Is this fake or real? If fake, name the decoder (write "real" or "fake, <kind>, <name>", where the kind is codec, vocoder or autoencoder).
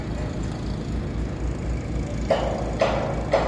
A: real